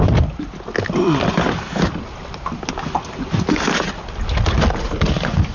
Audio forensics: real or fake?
real